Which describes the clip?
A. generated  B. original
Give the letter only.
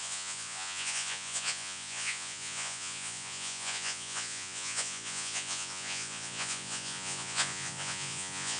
A